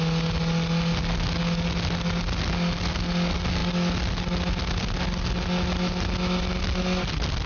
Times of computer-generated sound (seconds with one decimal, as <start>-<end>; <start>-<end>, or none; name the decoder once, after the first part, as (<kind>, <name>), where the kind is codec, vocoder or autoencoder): none